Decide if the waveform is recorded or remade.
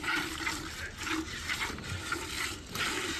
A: recorded